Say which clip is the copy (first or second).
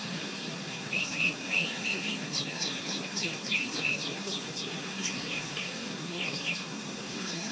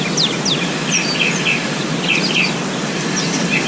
first